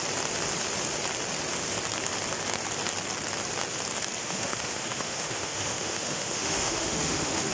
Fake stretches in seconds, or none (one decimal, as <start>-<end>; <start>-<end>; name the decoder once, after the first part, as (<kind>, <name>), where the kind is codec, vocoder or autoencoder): 4.2-7.5 (autoencoder, DAC-VAE)